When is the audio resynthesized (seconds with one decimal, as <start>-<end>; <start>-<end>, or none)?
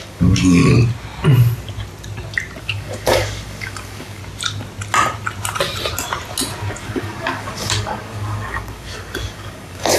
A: 0.0-0.6; 2.6-4.2; 6.7-10.0